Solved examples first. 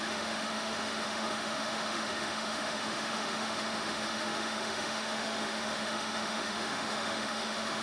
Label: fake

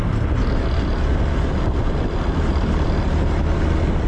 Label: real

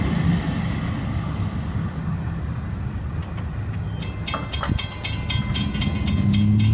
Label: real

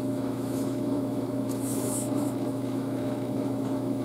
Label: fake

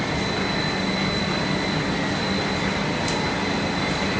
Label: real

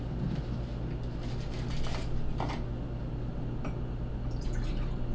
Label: real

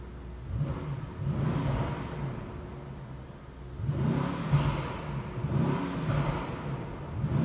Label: real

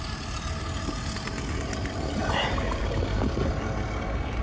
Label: real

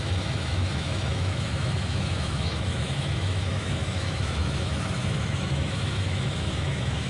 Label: fake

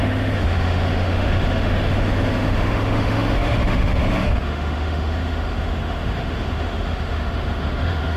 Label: fake